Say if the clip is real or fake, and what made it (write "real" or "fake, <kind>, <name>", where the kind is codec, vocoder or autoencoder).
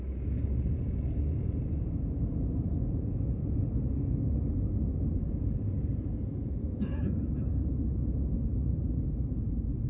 fake, vocoder, Vocos